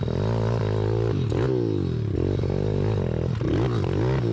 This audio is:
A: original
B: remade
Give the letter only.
A